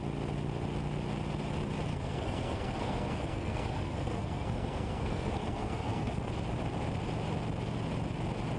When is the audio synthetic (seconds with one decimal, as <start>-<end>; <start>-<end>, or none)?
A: 1.9-6.3